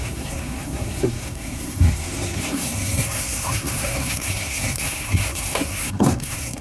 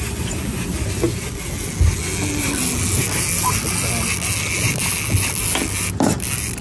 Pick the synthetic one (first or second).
first